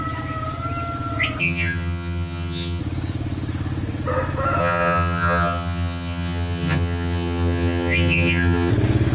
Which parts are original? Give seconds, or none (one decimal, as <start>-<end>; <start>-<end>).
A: 0.0-1.4; 2.8-4.6; 8.7-9.1